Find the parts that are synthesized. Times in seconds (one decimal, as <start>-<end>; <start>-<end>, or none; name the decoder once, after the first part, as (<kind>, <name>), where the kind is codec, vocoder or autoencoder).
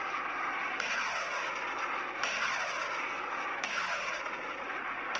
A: 3.5-4.2 (codec, DAC)